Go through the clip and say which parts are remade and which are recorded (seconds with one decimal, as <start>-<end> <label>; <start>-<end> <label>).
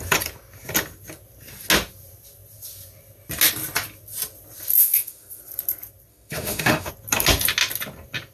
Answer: 0.0-4.8 recorded; 4.8-5.4 remade; 5.4-6.1 recorded; 6.1-6.9 remade; 6.9-8.3 recorded